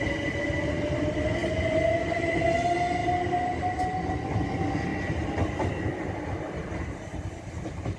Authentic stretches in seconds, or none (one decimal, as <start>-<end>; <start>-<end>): 0.0-8.0